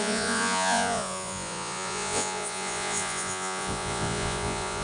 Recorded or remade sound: remade